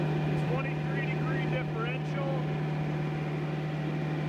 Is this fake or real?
real